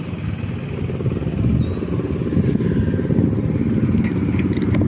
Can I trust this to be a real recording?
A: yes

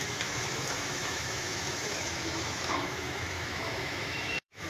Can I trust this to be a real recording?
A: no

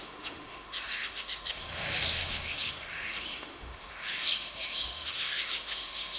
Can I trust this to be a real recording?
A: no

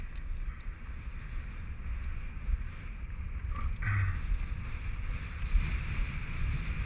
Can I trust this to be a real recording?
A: yes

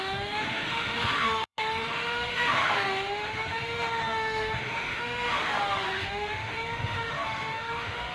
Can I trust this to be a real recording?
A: no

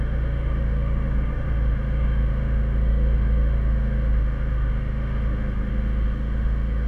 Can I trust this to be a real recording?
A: no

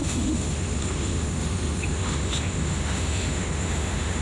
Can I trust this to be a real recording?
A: no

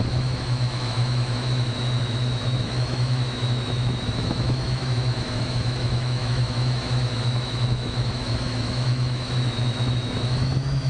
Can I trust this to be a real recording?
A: no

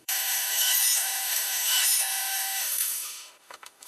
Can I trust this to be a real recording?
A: no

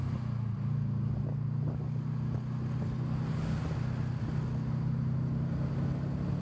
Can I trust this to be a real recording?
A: yes